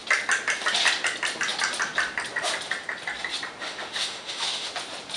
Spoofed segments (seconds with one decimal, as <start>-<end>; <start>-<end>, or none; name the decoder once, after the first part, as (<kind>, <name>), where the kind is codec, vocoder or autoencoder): 3.6-4.7 (autoencoder, DAC-VAE)